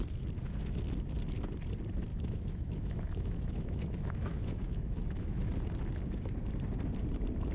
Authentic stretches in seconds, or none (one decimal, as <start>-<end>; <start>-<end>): 0.0-2.1; 5.5-7.5